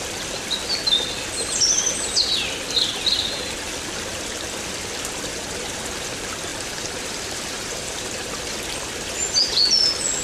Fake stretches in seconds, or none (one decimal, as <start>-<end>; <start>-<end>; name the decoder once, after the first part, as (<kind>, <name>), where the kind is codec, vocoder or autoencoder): 6.5-8.3 (vocoder, BigVGAN v2)

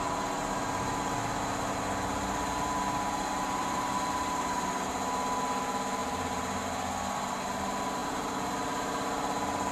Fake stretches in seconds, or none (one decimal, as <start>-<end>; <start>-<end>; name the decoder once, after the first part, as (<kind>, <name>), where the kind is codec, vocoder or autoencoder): 2.1-4.7 (vocoder, BigVGAN v2); 6.0-6.6; 8.0-8.5

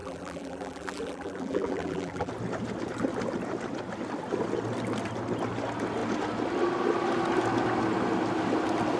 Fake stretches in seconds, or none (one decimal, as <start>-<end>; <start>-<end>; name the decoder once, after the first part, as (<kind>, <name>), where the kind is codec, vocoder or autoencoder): 0.0-2.3 (vocoder, BigVGAN v2)

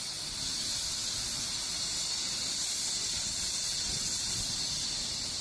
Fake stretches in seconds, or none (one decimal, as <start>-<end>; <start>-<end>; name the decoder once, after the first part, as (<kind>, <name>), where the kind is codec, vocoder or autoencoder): none

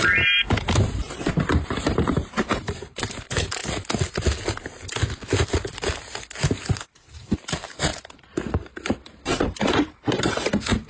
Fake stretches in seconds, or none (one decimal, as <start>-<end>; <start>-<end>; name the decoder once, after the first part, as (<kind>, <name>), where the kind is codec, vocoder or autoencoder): 0.0-3.6 (vocoder, BigVGAN v2); 6.5-10.9

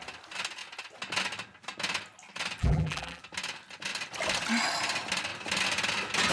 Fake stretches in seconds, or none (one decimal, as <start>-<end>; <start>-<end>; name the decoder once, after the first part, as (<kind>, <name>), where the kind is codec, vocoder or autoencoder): 2.6-3.2 (vocoder, BigVGAN v2)

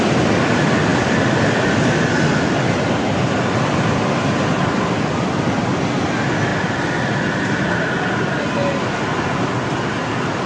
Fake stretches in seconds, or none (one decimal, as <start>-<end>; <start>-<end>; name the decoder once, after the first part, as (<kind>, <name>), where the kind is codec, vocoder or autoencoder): 6.5-7.9 (vocoder, BigVGAN v2)

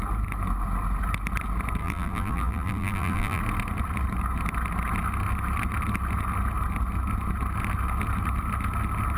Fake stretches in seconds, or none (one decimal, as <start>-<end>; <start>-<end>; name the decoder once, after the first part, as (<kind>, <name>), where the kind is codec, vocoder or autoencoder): 1.8-3.4 (vocoder, BigVGAN v2)